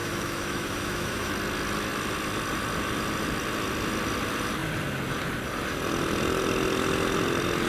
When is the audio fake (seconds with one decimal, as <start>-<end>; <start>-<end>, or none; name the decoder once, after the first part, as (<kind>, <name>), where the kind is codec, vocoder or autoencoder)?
0.0-1.3 (autoencoder, DAC-VAE)